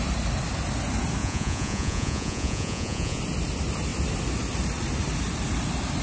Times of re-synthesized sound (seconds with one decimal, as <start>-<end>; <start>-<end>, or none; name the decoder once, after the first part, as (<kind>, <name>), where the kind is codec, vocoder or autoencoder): 1.2-3.2 (vocoder, Vocos)